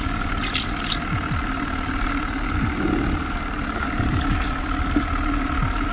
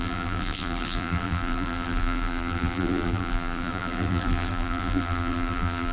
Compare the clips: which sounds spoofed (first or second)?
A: second